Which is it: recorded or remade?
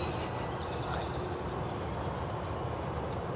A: recorded